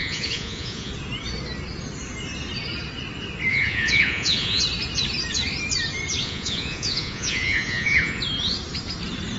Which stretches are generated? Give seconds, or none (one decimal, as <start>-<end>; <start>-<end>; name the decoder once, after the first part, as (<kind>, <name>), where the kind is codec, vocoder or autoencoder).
0.0-0.9 (vocoder, Vocos); 3.5-4.6; 6.2-8.2

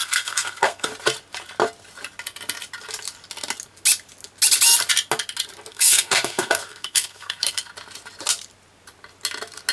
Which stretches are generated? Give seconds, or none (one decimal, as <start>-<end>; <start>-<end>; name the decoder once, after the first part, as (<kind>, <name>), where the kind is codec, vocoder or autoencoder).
0.0-0.9 (codec, SNAC); 5.7-7.7

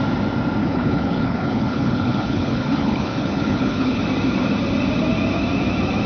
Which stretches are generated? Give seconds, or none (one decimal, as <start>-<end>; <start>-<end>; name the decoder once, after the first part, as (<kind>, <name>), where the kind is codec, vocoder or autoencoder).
0.6-4.0 (codec, HILCodec)

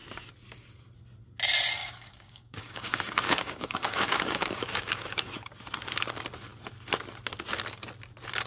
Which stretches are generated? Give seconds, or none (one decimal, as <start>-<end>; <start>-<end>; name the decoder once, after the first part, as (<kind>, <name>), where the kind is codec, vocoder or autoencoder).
1.8-5.3 (codec, DAC)